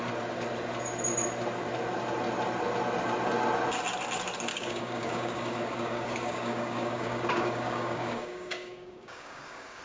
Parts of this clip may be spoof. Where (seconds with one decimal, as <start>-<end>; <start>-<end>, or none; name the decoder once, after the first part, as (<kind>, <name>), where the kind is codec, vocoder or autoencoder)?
4.5-9.8 (codec, DAC)